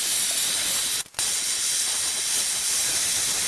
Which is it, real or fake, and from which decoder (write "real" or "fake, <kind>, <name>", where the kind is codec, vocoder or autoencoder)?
real